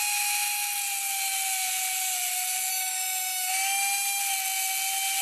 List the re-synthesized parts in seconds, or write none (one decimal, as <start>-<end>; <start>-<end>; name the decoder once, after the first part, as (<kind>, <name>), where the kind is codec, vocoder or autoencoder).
2.7-4.2 (autoencoder, DAC-VAE)